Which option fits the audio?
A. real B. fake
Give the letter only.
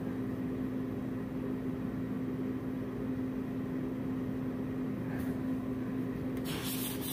A